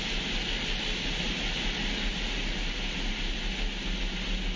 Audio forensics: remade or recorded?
recorded